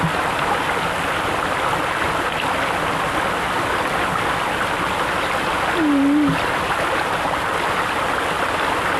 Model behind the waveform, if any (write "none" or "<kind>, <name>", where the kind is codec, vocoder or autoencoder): none